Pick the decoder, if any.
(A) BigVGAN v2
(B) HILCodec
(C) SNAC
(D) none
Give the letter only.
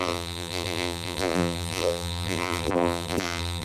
A